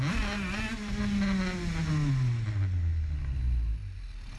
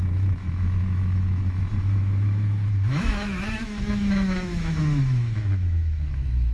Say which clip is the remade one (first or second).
second